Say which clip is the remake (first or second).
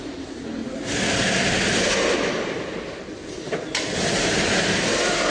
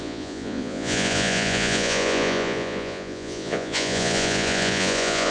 second